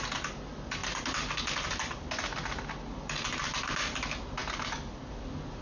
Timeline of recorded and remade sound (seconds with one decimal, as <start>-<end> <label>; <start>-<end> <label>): 0.0-5.6 recorded